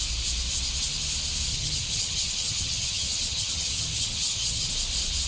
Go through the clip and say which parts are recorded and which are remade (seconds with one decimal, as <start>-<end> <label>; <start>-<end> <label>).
0.0-1.5 recorded; 1.5-4.7 remade; 4.7-5.3 recorded